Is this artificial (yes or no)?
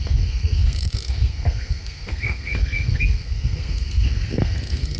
yes